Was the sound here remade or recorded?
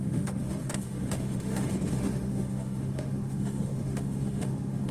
remade